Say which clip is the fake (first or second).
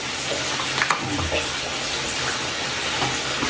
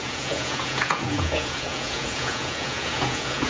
second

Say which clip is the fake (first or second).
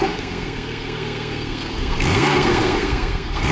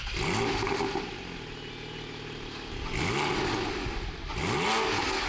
first